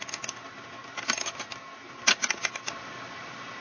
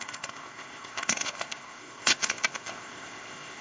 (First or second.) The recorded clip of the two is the first